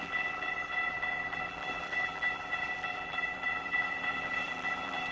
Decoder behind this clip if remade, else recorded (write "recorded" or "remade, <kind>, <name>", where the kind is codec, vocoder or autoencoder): remade, vocoder, BigVGAN v2